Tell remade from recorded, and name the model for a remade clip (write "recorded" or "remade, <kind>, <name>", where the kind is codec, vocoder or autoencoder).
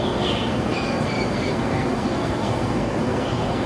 remade, codec, SNAC